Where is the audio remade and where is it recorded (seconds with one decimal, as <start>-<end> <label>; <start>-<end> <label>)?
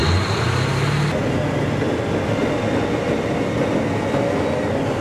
0.0-5.0 recorded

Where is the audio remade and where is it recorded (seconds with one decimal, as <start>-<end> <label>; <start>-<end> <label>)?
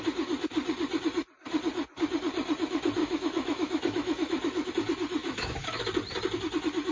0.0-3.0 recorded; 3.0-4.7 remade; 4.7-5.2 recorded; 5.2-5.8 remade; 5.8-6.9 recorded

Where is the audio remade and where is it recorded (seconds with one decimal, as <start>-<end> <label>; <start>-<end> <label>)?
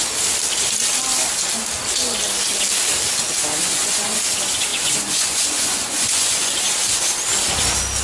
0.0-3.6 recorded; 3.6-4.2 remade; 4.2-4.7 recorded; 4.7-6.5 remade; 6.5-8.0 recorded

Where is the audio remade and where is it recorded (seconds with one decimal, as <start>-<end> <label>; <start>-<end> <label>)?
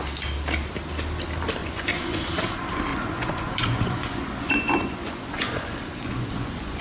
0.0-1.6 recorded; 1.6-2.3 remade; 2.3-2.9 recorded; 2.9-6.8 remade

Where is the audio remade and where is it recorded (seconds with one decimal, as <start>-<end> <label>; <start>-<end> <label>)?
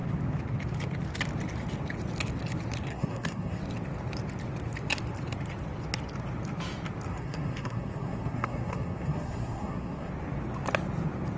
0.0-2.9 recorded; 2.9-3.6 remade; 3.6-7.1 recorded; 7.1-10.1 remade; 10.1-11.4 recorded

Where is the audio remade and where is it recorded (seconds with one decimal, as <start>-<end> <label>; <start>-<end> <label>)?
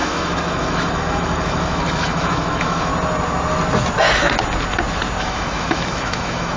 0.0-2.9 remade; 2.9-5.2 recorded; 5.2-6.6 remade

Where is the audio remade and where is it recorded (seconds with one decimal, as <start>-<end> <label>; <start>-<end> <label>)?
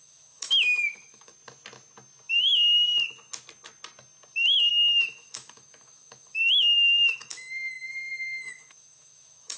0.0-1.3 remade; 1.3-4.7 recorded; 4.7-9.6 remade